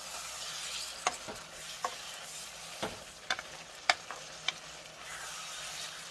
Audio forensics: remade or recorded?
recorded